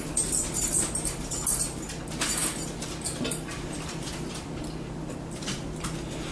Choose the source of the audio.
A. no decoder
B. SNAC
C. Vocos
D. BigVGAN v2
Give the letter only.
A